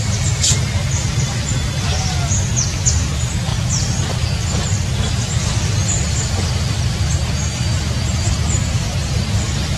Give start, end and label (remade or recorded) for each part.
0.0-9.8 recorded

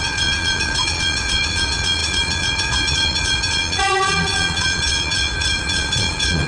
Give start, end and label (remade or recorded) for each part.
0.0-6.5 remade